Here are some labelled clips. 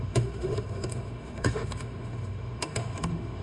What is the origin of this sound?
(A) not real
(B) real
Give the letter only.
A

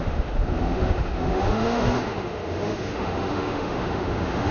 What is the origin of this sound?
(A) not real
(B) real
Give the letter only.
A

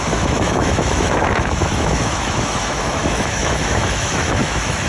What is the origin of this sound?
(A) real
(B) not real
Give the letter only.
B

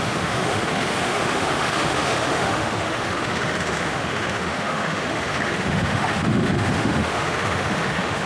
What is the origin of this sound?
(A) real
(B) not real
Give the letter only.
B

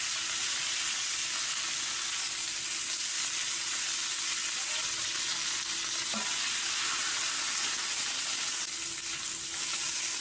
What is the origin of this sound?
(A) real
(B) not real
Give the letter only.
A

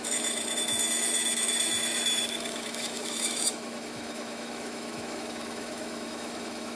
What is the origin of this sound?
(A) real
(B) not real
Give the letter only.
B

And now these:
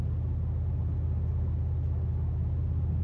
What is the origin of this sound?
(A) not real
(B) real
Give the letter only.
B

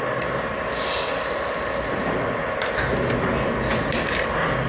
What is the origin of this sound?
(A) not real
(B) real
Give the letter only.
B